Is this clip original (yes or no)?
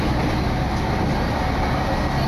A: yes